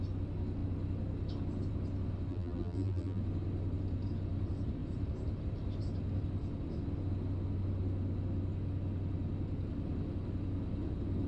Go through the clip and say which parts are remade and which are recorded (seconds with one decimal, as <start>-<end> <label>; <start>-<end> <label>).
0.0-2.3 recorded; 2.3-3.2 remade; 3.2-11.3 recorded